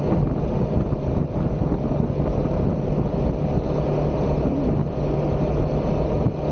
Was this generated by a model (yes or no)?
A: no